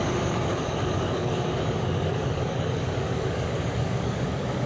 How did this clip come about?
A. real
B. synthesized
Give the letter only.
B